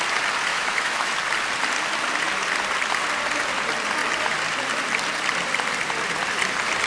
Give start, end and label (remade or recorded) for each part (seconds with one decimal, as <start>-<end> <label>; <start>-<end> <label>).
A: 0.0-0.5 recorded; 0.5-1.1 remade; 1.1-6.9 recorded